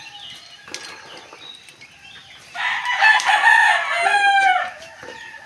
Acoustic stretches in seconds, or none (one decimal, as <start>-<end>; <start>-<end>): 0.0-2.2; 3.6-5.5